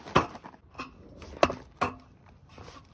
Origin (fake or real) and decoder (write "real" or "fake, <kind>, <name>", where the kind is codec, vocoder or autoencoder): real